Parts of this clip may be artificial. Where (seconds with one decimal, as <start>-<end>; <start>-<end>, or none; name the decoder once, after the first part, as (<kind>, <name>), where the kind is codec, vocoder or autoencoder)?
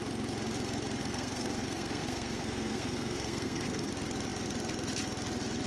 1.0-3.9 (codec, SNAC)